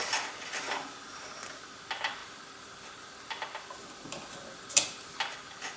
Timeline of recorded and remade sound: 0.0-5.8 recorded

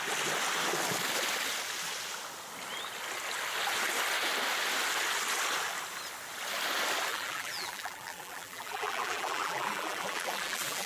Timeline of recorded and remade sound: 0.0-7.1 recorded; 7.1-10.9 remade

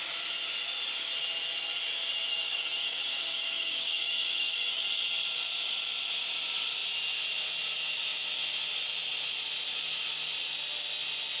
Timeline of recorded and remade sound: 0.0-2.3 recorded; 2.3-4.7 remade; 4.7-11.4 recorded

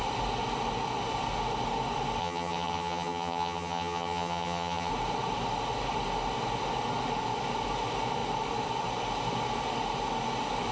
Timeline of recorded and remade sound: 0.0-2.2 recorded; 2.2-4.9 remade; 4.9-10.7 recorded

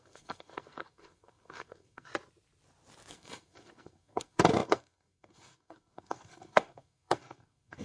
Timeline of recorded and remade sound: 0.0-2.1 remade; 2.1-3.1 recorded; 3.1-7.8 remade

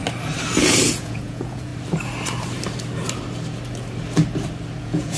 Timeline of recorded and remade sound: 0.0-0.9 recorded; 0.9-1.7 remade; 1.7-4.8 recorded; 4.8-5.2 remade

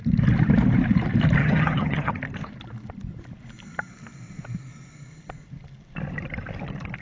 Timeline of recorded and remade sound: 0.0-1.4 recorded; 1.4-2.2 remade; 2.2-7.0 recorded

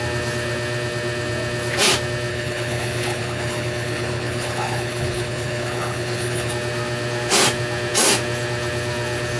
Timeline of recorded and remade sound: 0.0-2.3 recorded; 2.3-6.5 remade; 6.5-9.4 recorded